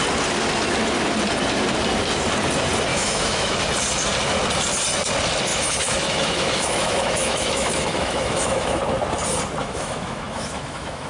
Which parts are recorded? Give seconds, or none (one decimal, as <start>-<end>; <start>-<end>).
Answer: 0.0-2.9; 3.6-5.5; 8.8-9.6